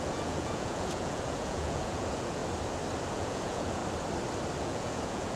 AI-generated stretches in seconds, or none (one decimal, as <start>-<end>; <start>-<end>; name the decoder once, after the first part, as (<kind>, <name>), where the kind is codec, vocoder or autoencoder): 0.0-2.4 (vocoder, Vocos); 3.1-3.8; 4.6-5.4